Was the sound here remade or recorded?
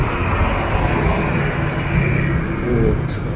recorded